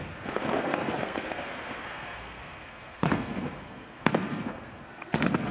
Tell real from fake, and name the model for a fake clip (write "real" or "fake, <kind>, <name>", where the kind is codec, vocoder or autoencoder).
fake, codec, SNAC